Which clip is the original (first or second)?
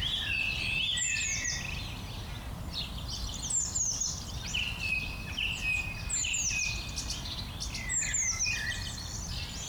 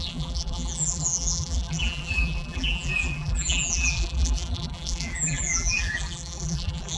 first